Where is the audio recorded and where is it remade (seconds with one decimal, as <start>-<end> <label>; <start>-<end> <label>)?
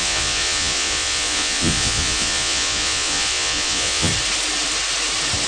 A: 0.0-4.1 remade; 4.1-5.5 recorded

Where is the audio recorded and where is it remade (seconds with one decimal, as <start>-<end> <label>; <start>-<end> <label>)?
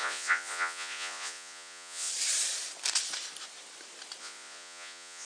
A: 0.0-2.1 remade; 2.1-4.2 recorded; 4.2-5.2 remade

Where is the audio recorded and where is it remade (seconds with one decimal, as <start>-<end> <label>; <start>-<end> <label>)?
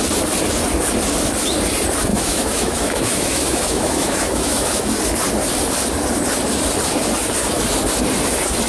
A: 0.0-2.1 recorded; 2.1-4.9 remade; 4.9-8.7 recorded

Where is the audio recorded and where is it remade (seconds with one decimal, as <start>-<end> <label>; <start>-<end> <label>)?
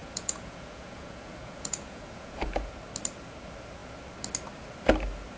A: 0.0-2.7 remade; 2.7-5.4 recorded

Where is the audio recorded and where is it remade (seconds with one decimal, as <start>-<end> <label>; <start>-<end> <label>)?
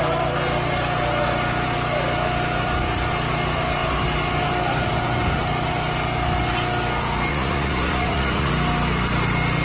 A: 0.0-7.3 recorded; 7.3-8.5 remade; 8.5-9.6 recorded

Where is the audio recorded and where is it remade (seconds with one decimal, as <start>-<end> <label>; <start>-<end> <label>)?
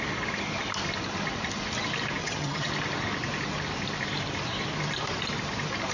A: 0.0-2.2 recorded; 2.2-2.7 remade; 2.7-5.9 recorded